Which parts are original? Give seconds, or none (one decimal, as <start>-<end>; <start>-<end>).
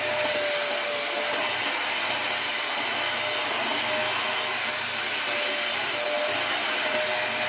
0.0-7.5